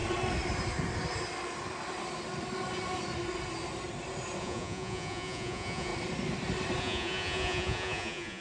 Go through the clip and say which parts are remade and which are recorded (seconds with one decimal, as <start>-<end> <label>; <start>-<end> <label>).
0.0-4.4 recorded; 4.4-5.9 remade; 5.9-6.8 recorded; 6.8-8.4 remade

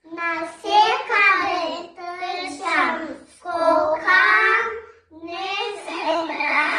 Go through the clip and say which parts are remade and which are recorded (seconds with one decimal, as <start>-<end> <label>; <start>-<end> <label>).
0.0-5.8 recorded; 5.8-6.8 remade